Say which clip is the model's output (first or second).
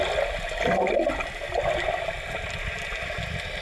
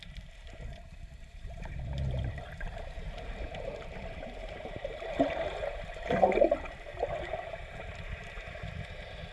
second